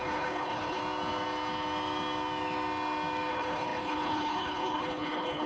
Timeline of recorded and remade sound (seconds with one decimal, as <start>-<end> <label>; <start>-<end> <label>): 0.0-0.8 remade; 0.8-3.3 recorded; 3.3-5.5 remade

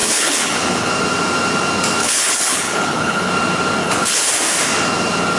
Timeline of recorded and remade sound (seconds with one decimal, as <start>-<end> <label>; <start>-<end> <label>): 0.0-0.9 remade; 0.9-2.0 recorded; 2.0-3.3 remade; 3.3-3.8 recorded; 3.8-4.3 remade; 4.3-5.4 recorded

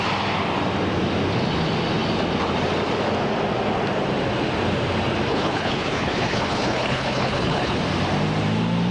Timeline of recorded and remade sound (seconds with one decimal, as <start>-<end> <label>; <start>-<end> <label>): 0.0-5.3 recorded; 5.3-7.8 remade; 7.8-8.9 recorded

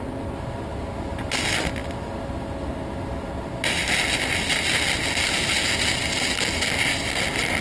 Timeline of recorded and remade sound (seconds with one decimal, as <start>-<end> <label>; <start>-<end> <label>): 0.0-7.6 recorded

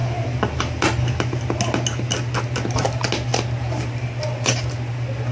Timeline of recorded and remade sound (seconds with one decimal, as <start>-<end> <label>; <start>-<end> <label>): 0.0-5.3 recorded

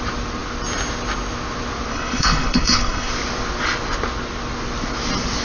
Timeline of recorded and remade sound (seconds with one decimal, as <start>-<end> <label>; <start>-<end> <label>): 0.0-1.9 recorded; 1.9-3.1 remade; 3.1-5.4 recorded